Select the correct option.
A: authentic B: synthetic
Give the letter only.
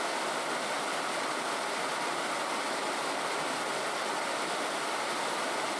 A